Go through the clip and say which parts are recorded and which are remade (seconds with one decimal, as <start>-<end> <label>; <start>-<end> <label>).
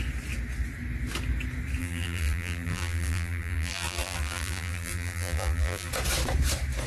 0.0-1.8 recorded; 1.8-5.9 remade; 5.9-6.9 recorded